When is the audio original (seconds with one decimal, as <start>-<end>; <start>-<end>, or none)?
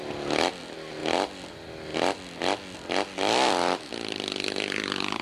0.0-5.2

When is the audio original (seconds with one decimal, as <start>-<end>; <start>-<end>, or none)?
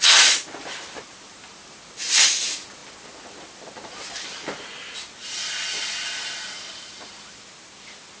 0.0-8.2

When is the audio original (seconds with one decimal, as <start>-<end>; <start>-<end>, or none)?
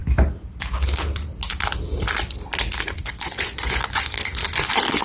0.0-3.0; 4.4-5.0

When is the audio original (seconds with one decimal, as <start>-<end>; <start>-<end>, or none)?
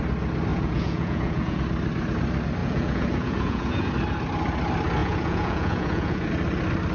0.0-0.5; 1.6-2.6; 3.9-5.0; 6.3-6.9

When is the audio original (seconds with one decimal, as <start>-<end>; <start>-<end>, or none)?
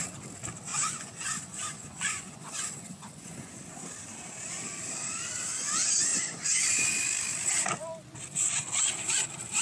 0.0-0.7; 3.5-6.1; 6.8-9.6